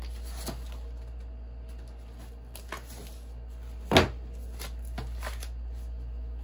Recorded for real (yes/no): yes